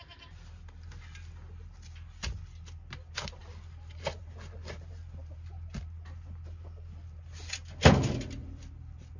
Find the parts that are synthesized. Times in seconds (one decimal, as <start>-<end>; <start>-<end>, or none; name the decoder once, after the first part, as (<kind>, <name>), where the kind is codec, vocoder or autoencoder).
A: none